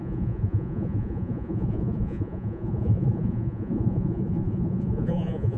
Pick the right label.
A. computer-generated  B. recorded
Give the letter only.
A